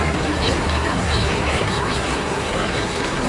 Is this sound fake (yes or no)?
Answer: yes